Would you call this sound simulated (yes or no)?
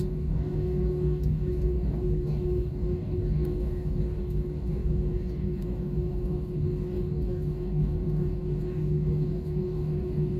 yes